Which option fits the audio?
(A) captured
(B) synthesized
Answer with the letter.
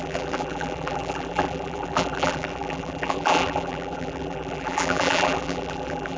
B